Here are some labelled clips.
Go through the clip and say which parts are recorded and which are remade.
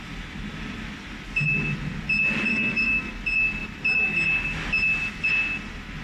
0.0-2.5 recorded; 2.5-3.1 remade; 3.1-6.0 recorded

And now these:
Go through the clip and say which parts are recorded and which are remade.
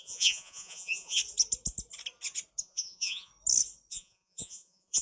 0.0-1.2 remade; 1.2-2.6 recorded; 2.6-3.3 remade; 3.3-3.9 recorded; 3.9-5.0 remade